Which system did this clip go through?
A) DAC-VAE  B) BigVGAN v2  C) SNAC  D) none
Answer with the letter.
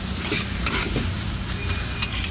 D